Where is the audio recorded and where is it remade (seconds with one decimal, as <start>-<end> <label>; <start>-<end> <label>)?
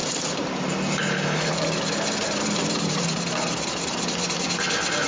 0.0-3.1 remade; 3.1-5.1 recorded